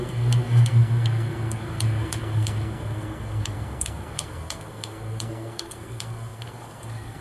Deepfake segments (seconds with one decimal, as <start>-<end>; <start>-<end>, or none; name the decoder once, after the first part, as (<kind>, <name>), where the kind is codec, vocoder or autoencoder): 0.0-7.2 (codec, SNAC)